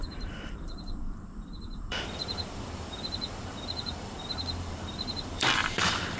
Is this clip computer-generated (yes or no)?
yes